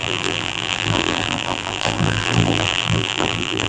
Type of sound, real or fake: fake